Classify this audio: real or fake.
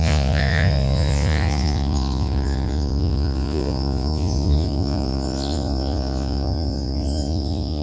fake